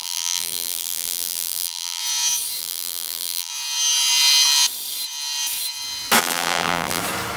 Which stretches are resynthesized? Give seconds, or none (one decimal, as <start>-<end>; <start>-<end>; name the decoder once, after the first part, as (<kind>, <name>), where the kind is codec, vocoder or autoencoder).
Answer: 0.0-2.0 (vocoder, BigVGAN v2); 2.6-3.5; 6.2-7.0